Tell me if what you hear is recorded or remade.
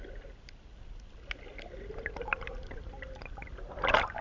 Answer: recorded